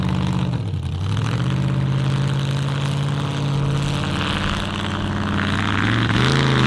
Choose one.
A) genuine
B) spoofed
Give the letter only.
A